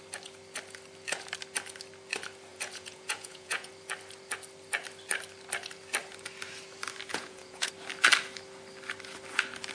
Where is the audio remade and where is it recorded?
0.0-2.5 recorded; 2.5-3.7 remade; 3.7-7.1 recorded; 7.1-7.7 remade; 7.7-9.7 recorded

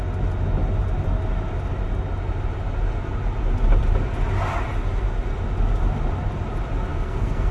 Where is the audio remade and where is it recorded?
0.0-6.9 recorded; 6.9-7.5 remade

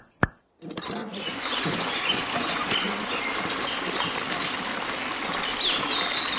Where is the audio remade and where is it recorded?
0.0-1.0 recorded; 1.0-3.2 remade; 3.2-6.4 recorded

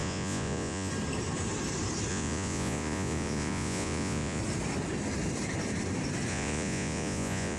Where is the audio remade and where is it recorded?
0.0-0.9 remade; 0.9-2.1 recorded; 2.1-4.4 remade; 4.4-6.3 recorded; 6.3-7.6 remade

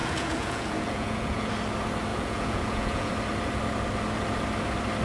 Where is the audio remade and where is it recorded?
0.0-1.5 remade; 1.5-2.1 recorded; 2.1-3.1 remade; 3.1-5.0 recorded

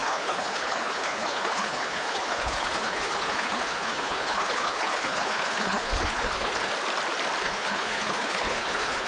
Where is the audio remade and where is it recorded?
0.0-6.7 remade; 6.7-7.4 recorded; 7.4-9.1 remade

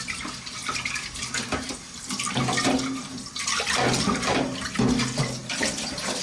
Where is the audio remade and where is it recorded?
0.0-3.0 recorded; 3.0-4.3 remade; 4.3-5.4 recorded; 5.4-6.2 remade

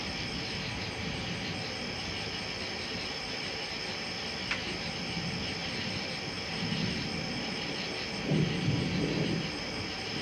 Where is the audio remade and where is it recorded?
0.0-1.3 remade; 1.3-5.6 recorded; 5.6-6.4 remade; 6.4-10.2 recorded